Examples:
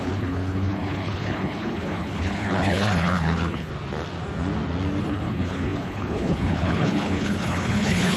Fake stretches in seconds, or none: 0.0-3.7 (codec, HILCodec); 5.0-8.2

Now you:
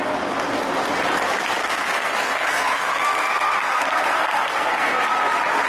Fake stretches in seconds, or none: 1.6-5.0 (codec, SNAC)

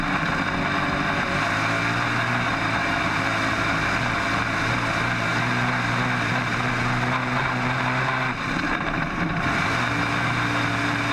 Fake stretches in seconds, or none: none

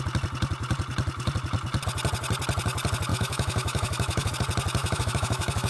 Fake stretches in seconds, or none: 3.1-4.3 (autoencoder, DAC-VAE); 4.8-5.7

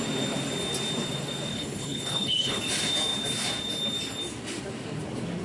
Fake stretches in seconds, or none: 1.5-2.6 (codec, HILCodec)